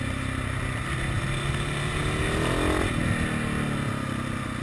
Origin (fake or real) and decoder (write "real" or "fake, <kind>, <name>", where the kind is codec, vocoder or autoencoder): real